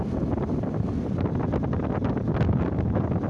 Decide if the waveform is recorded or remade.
recorded